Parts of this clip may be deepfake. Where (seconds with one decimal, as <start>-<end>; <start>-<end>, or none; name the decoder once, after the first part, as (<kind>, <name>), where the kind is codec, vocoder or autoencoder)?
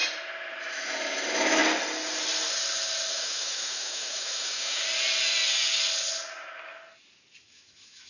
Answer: 0.6-1.6 (autoencoder, DAC-VAE); 3.1-4.8; 7.4-8.1